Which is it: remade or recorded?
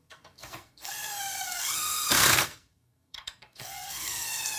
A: remade